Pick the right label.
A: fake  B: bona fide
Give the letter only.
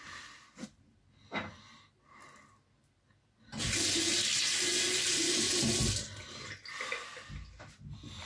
B